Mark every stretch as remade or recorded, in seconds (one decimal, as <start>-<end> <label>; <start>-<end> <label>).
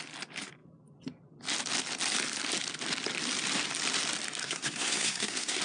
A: 0.0-4.4 recorded; 4.4-5.6 remade